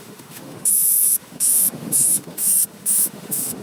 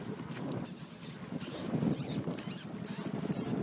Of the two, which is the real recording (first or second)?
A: second